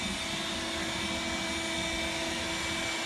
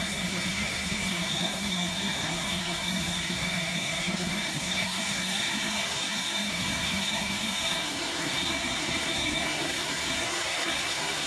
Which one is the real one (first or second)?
first